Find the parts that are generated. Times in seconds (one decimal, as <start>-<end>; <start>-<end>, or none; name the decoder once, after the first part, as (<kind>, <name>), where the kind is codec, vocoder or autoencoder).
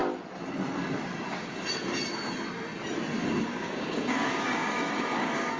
3.2-5.6 (codec, DAC)